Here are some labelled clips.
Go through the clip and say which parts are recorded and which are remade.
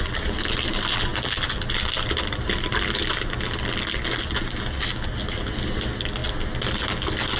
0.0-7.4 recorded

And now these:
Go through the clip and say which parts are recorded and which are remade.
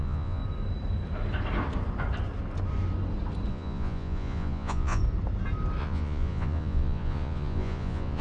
0.0-0.4 remade; 0.4-3.5 recorded; 3.5-5.0 remade; 5.0-5.8 recorded; 5.8-8.2 remade